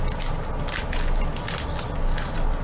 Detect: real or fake real